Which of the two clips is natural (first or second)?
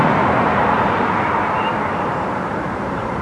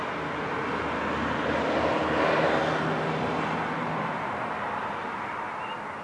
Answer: second